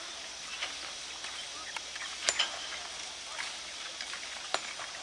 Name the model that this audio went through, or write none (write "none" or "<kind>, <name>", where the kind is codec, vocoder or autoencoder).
none